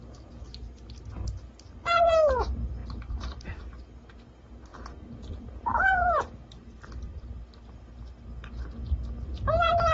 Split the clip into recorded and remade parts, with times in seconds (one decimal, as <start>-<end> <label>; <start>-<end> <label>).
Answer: 0.0-2.8 recorded; 2.8-3.6 remade; 3.6-4.7 recorded; 4.7-7.3 remade; 7.3-8.8 recorded; 8.8-9.3 remade; 9.3-9.9 recorded